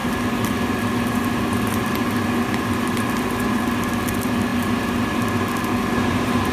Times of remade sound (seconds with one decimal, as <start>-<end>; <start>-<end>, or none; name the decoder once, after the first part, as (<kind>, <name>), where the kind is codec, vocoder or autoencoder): none